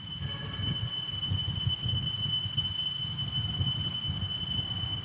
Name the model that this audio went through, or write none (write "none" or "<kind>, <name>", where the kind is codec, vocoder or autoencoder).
none